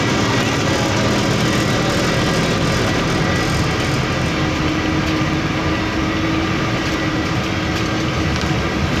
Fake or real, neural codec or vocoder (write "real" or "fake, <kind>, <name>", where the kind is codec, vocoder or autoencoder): real